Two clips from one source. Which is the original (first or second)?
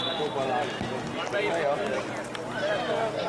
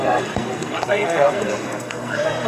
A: first